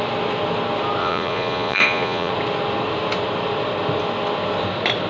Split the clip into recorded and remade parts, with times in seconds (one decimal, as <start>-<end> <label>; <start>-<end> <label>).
0.0-1.0 recorded; 1.0-2.3 remade; 2.3-5.1 recorded